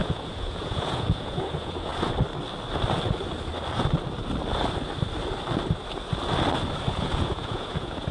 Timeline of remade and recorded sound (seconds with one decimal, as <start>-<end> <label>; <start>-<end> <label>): 0.0-1.9 remade; 1.9-6.8 recorded; 6.8-8.1 remade